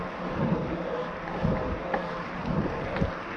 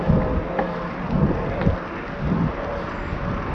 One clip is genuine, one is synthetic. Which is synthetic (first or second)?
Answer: first